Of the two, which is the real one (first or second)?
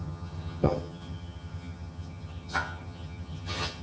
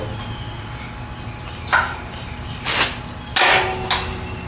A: second